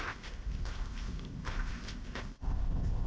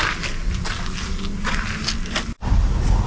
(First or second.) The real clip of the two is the second